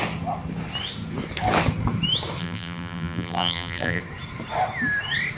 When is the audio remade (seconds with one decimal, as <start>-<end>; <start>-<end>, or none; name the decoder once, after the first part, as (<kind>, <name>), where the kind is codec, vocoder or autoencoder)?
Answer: 2.4-4.0 (vocoder, BigVGAN v2)